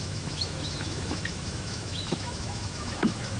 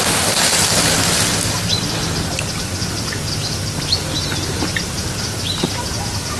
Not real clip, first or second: first